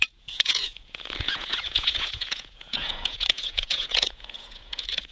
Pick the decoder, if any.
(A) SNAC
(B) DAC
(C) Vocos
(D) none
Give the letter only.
C